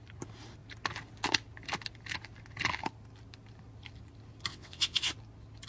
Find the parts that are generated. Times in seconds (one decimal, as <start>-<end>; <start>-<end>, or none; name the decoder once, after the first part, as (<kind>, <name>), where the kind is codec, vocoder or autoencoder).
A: 4.5-5.1 (vocoder, WaveNeXt)